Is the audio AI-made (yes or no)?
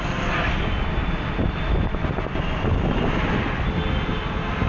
no